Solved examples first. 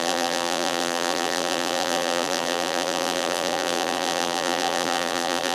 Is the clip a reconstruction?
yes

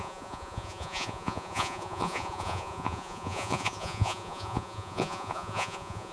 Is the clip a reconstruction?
yes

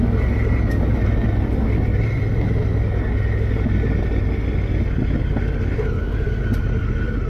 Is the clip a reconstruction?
no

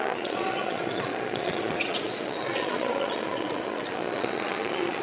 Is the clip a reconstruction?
yes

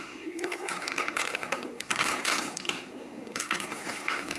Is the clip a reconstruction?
yes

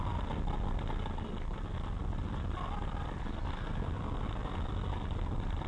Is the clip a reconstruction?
no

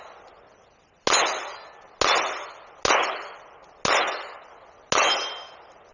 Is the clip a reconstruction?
no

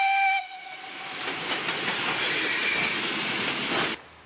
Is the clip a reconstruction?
no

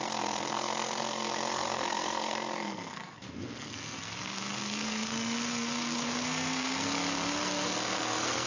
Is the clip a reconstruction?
yes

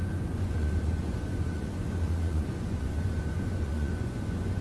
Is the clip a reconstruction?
yes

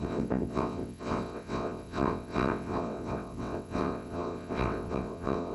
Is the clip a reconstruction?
yes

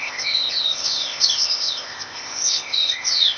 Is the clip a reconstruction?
yes